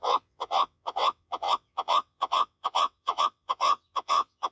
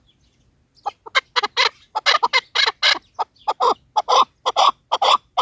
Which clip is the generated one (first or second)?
first